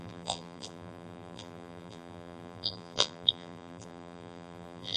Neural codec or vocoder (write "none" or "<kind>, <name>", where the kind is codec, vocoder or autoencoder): vocoder, BigVGAN v2